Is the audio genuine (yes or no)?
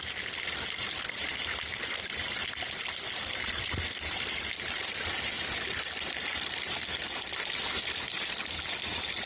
yes